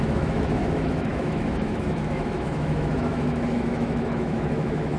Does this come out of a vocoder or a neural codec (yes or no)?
yes